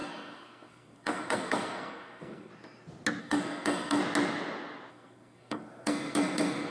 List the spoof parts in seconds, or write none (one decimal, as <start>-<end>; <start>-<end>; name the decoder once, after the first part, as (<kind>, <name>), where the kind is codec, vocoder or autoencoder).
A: 0.0-2.5 (codec, SNAC); 3.2-4.0; 4.9-6.7